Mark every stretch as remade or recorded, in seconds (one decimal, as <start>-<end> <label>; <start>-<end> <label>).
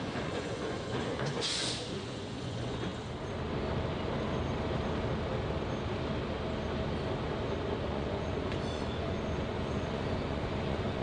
0.0-2.9 remade; 2.9-7.9 recorded; 7.9-11.0 remade